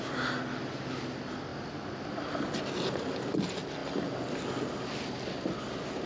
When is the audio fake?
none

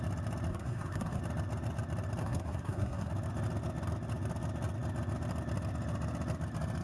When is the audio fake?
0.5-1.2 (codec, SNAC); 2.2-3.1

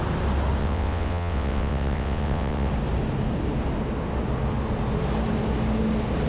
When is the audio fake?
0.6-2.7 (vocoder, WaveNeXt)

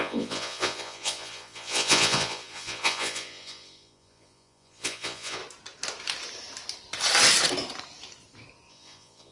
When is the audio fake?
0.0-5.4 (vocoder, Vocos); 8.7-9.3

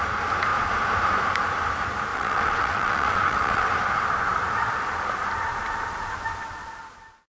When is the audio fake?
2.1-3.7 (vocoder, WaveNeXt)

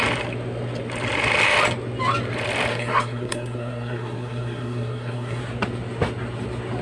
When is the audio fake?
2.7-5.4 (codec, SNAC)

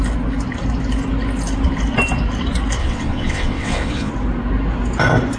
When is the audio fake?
2.8-4.1 (vocoder, WaveNeXt)